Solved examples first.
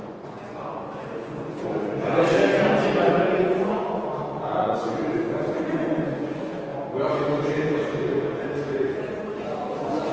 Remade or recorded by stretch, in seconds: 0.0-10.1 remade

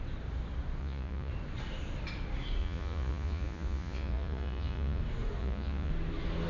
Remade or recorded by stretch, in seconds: 0.0-0.8 recorded; 0.8-1.3 remade; 1.3-2.6 recorded; 2.6-5.0 remade; 5.0-5.4 recorded; 5.4-5.9 remade; 5.9-6.5 recorded

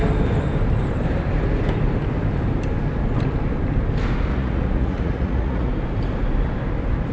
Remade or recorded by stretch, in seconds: 0.0-4.3 recorded; 4.3-5.7 remade; 5.7-7.1 recorded

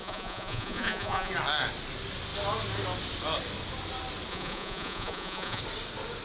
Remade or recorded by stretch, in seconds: 0.0-1.3 remade; 1.3-4.3 recorded; 4.3-5.6 remade; 5.6-6.2 recorded

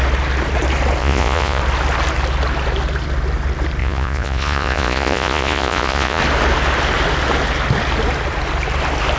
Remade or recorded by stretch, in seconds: 0.0-1.0 recorded; 1.0-1.6 remade; 1.6-3.8 recorded; 3.8-6.2 remade; 6.2-9.2 recorded

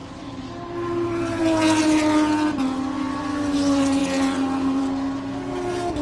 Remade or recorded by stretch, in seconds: 0.0-6.0 recorded

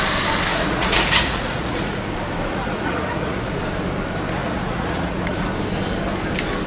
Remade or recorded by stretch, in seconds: 0.0-0.5 recorded; 0.5-2.0 remade; 2.0-2.5 recorded; 2.5-3.5 remade; 3.5-4.4 recorded; 4.4-5.5 remade; 5.5-6.7 recorded